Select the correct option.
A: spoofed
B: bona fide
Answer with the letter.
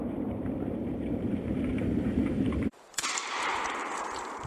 A